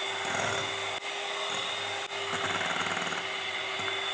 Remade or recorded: recorded